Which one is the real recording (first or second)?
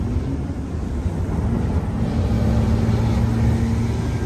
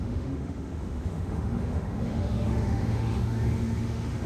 first